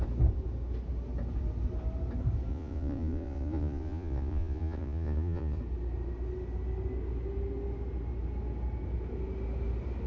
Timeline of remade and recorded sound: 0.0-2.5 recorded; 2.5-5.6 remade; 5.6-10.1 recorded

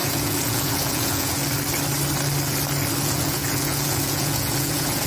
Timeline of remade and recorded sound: 0.0-1.4 remade; 1.4-3.0 recorded; 3.0-5.1 remade

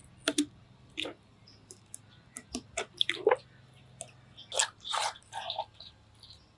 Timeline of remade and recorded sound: 0.0-6.6 recorded

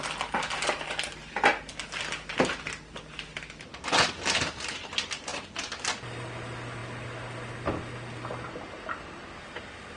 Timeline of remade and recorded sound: 0.0-10.0 recorded

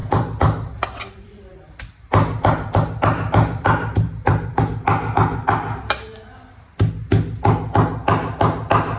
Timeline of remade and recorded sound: 0.0-4.6 remade; 4.6-9.0 recorded

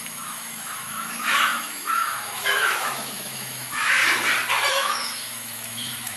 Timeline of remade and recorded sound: 0.0-4.0 remade; 4.0-4.7 recorded; 4.7-6.2 remade

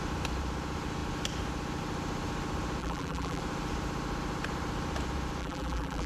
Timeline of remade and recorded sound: 0.0-2.8 recorded; 2.8-3.4 remade; 3.4-5.4 recorded; 5.4-6.1 remade